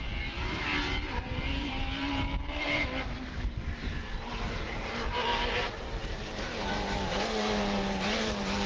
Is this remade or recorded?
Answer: remade